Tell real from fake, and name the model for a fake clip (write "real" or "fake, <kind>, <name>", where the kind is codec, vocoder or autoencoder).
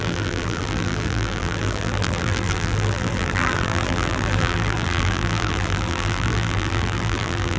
fake, vocoder, BigVGAN v2